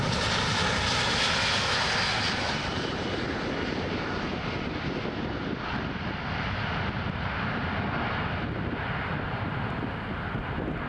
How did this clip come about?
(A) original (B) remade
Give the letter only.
A